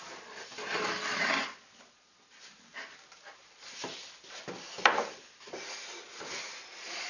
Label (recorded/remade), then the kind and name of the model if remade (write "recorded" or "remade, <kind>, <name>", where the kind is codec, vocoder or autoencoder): recorded